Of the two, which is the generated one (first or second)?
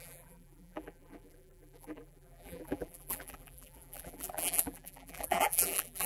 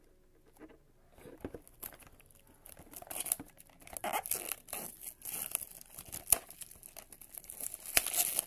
first